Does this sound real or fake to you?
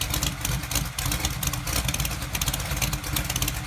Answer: real